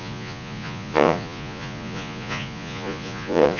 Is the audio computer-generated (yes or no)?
yes